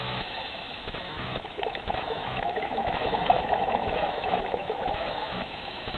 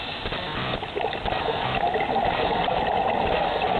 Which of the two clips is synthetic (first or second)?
first